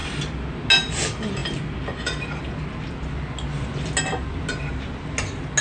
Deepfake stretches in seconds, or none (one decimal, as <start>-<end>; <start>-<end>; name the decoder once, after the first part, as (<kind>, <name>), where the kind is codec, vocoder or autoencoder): none